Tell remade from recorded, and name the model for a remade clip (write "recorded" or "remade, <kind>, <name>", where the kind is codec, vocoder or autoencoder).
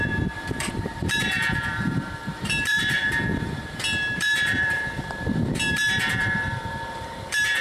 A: remade, vocoder, BigVGAN v2